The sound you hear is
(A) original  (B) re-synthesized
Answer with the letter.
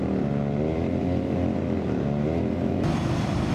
B